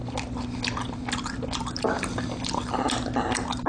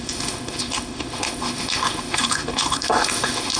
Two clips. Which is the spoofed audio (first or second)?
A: second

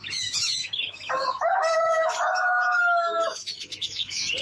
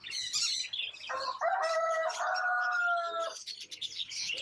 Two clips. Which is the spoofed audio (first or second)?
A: first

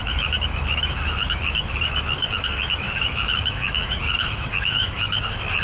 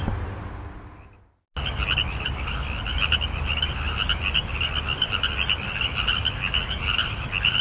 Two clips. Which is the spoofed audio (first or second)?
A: first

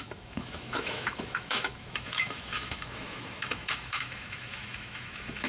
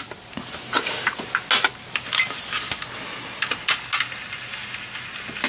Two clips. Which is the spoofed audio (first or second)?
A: first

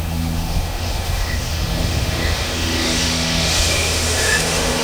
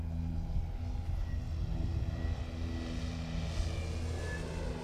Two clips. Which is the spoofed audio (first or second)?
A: first